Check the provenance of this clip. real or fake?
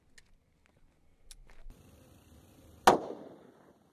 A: real